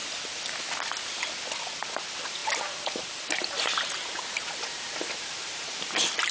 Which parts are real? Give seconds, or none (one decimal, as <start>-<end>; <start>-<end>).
0.0-1.9